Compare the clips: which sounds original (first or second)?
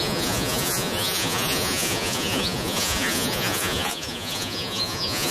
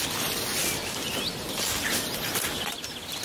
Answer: second